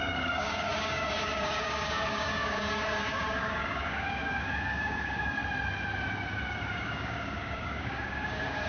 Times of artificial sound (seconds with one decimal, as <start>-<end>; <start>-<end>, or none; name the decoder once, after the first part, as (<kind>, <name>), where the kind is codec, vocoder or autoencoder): 0.0-5.4 (codec, DAC); 6.5-8.7